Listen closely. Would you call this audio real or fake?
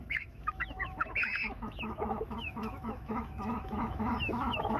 fake